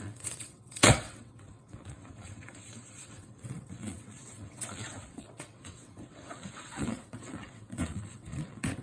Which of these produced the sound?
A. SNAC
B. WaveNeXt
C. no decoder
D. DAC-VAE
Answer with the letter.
B